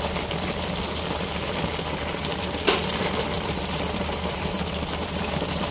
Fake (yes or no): yes